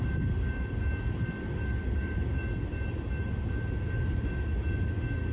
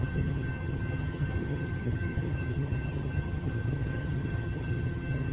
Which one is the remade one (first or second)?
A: second